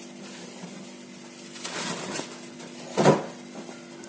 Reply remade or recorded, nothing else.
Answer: recorded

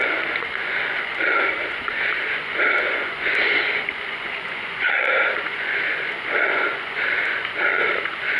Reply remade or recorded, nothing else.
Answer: remade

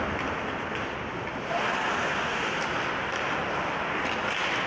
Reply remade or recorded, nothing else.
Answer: recorded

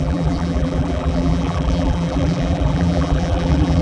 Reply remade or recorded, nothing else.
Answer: remade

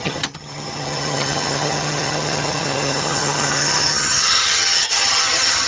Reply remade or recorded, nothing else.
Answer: remade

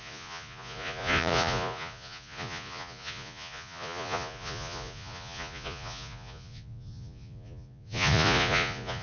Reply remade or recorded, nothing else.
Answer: remade